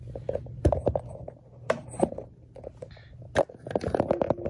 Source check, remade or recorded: recorded